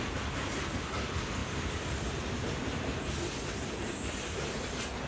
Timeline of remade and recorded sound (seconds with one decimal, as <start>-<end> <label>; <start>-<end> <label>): 0.0-1.4 recorded; 1.4-4.2 remade; 4.2-5.1 recorded